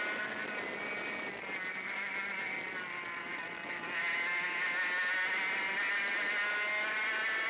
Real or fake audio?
real